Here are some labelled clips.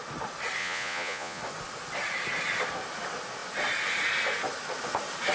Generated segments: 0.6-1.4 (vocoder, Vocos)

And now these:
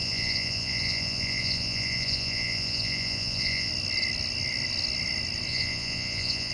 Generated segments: 0.0-3.7 (vocoder, Vocos); 5.5-6.5

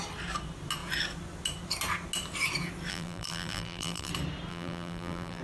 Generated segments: 2.9-4.1 (vocoder, BigVGAN v2); 4.5-5.4

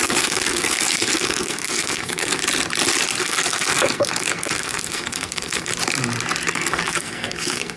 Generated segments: 0.0-2.4 (codec, SNAC); 3.2-5.7; 6.5-7.8

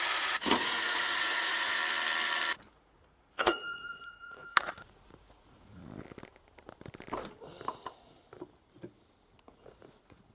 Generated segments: 0.0-1.8 (vocoder, Vocos); 2.7-5.8; 9.4-10.3

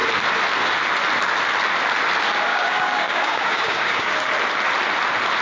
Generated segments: 2.5-4.1 (codec, DAC)

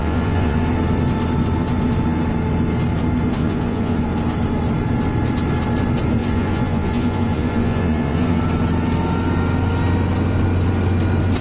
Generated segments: 0.0-0.6 (vocoder, Vocos); 3.4-4.0; 6.2-8.4